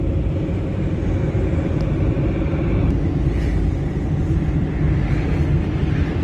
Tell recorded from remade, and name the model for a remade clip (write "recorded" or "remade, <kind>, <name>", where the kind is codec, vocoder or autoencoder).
recorded